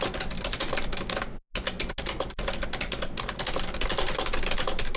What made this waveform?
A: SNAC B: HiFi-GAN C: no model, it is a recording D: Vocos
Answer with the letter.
C